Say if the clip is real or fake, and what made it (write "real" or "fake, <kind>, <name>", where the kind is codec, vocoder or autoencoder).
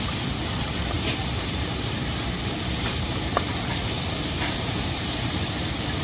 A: fake, vocoder, BigVGAN v2